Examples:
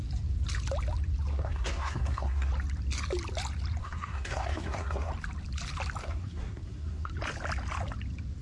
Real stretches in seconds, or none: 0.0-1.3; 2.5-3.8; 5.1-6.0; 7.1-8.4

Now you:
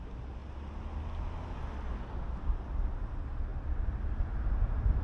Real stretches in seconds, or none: 0.4-2.3; 3.5-4.4

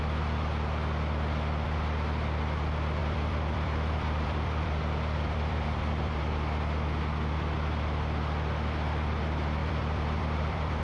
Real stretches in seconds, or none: 0.0-3.0; 6.2-9.6